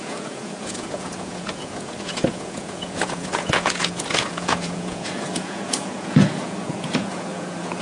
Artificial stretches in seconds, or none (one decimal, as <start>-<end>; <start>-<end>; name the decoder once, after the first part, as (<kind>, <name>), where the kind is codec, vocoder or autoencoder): 0.0-7.8 (vocoder, Vocos)